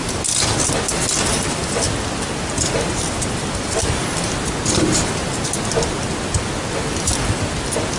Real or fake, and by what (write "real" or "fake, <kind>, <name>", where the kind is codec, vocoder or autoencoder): real